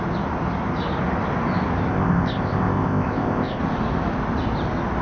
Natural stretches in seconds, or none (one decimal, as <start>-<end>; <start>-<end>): 0.0-1.9; 3.6-5.0